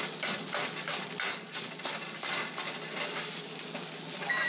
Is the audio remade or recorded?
recorded